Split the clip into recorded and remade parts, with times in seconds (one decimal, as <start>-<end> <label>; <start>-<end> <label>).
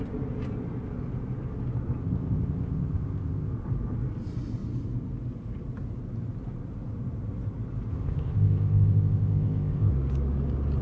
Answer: 0.0-2.0 recorded; 2.0-3.5 remade; 3.5-7.9 recorded; 7.9-9.9 remade; 9.9-10.8 recorded